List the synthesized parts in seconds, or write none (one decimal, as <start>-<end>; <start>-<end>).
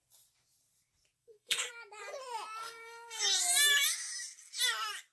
1.2-1.7; 2.6-3.4